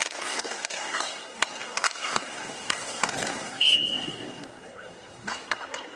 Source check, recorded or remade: remade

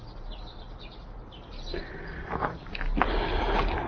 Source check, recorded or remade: recorded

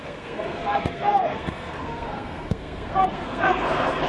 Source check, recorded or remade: remade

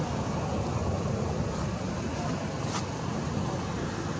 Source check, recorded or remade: recorded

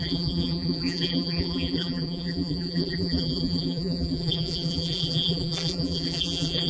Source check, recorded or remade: remade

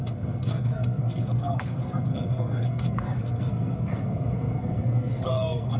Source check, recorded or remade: remade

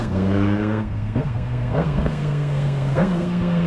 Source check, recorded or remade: remade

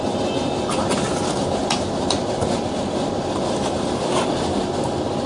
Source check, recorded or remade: recorded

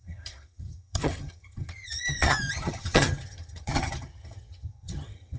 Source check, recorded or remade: remade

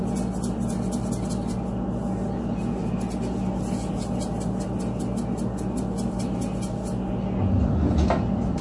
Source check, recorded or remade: recorded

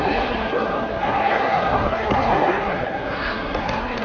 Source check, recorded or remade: remade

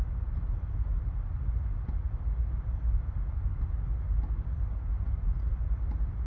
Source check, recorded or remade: recorded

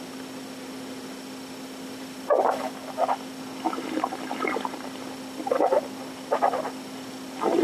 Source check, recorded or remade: recorded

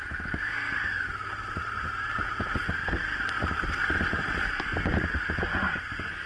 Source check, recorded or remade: recorded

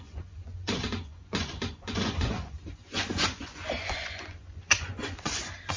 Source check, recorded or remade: remade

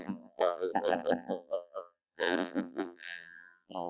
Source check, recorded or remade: remade